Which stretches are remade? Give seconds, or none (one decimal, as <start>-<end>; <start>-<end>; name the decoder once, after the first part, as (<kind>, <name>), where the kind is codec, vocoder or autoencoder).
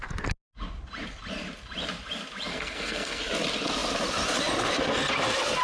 2.5-3.2 (codec, SNAC)